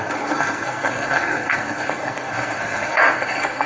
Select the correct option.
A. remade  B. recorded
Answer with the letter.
A